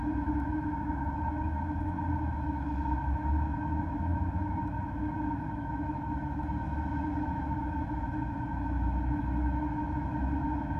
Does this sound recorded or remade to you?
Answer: remade